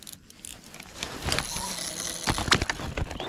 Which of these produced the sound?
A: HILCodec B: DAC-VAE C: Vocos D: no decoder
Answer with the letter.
D